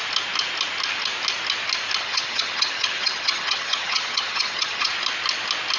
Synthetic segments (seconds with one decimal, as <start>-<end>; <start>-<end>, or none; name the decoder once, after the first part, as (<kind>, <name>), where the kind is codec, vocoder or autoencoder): 2.0-4.9 (vocoder, HiFi-GAN)